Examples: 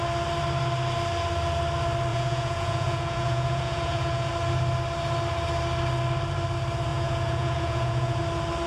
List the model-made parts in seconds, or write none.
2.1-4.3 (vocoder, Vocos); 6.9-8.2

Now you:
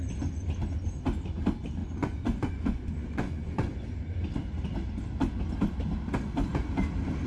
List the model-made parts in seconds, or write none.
1.8-3.7 (vocoder, Vocos)